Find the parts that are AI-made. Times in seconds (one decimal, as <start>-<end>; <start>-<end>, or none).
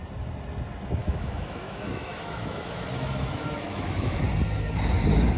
1.0-4.2